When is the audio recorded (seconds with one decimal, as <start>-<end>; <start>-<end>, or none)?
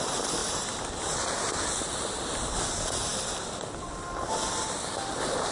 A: 0.0-5.5